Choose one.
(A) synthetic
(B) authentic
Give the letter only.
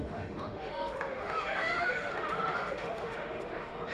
A